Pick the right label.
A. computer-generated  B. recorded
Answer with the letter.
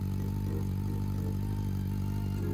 B